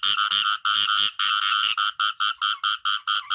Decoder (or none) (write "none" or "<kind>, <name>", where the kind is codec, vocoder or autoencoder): none